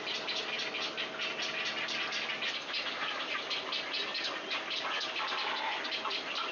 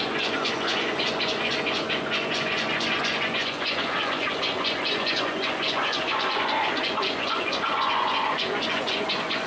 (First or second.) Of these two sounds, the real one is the first